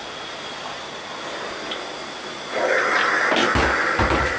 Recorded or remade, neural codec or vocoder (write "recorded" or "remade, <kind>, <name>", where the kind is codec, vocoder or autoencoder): recorded